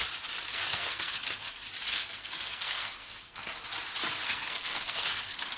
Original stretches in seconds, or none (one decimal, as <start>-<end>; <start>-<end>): 0.0-0.5; 1.5-1.9; 3.5-4.2